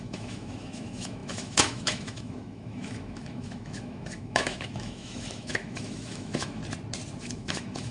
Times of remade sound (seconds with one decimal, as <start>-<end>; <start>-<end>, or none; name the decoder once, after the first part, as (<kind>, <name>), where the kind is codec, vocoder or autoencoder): 0.0-6.6 (autoencoder, DAC-VAE); 7.2-7.9